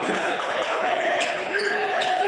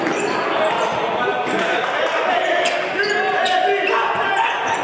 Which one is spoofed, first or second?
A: first